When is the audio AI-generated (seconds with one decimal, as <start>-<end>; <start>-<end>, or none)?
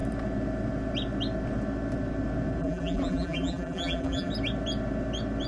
2.6-4.3